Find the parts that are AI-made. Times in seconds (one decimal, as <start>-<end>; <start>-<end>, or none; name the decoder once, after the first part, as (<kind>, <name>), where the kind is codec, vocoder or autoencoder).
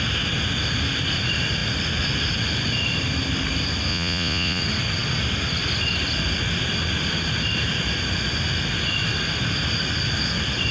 3.9-4.6 (vocoder, Vocos)